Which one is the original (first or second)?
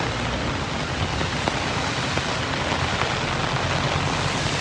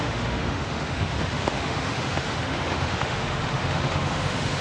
first